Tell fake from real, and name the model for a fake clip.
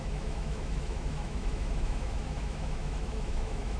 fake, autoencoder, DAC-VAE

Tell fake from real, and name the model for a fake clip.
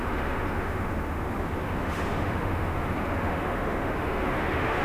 fake, autoencoder, DAC-VAE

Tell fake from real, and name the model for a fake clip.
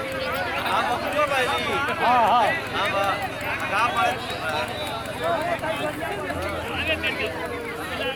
real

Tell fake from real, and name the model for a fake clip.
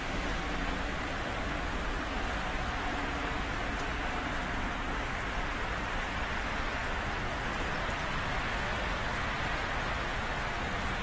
real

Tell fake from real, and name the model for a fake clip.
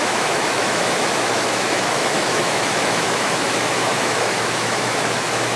fake, autoencoder, DAC-VAE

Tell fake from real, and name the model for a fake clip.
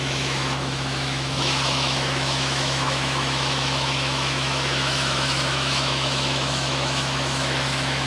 fake, autoencoder, DAC-VAE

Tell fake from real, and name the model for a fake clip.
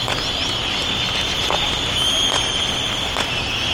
real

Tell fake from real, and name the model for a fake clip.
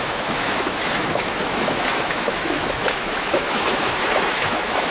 fake, autoencoder, DAC-VAE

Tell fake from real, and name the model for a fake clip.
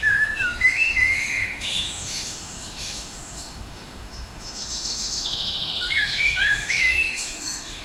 fake, autoencoder, DAC-VAE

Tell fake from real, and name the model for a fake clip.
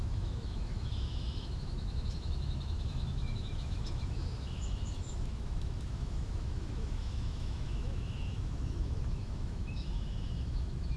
fake, autoencoder, DAC-VAE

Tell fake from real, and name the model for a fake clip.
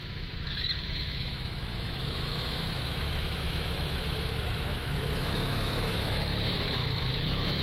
fake, autoencoder, DAC-VAE